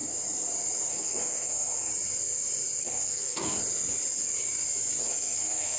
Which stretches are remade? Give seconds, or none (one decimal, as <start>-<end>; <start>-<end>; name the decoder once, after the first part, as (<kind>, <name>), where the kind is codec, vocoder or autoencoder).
0.9-1.9 (codec, SNAC); 2.8-3.6; 5.0-5.8